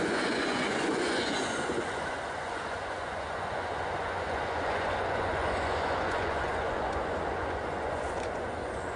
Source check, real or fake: fake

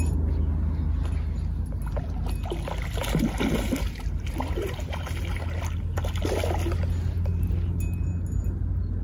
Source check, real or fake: real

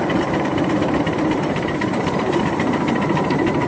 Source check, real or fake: fake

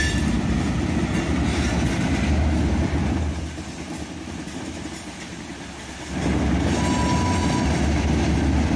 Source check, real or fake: real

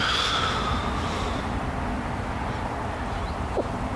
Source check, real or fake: real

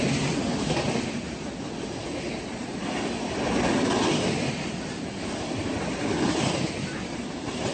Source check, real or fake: real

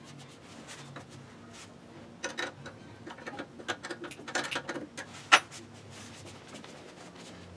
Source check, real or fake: real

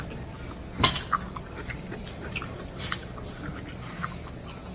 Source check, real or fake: real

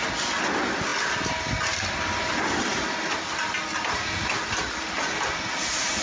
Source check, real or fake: real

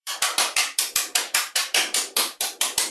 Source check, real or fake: fake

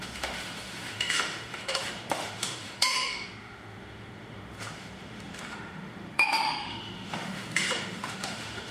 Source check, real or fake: fake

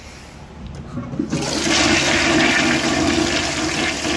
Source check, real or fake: real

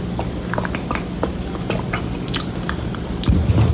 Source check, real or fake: real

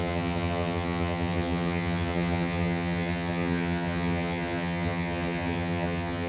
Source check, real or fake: fake